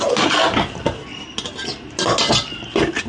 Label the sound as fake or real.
real